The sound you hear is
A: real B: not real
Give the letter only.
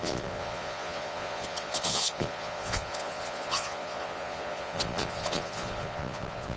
B